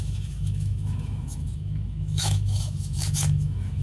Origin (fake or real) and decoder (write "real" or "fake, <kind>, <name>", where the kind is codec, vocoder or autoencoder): fake, autoencoder, DAC-VAE